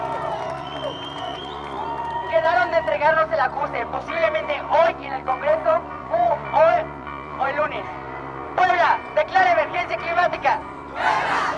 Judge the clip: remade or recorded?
remade